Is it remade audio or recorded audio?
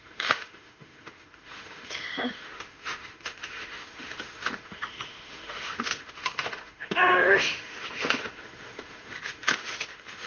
remade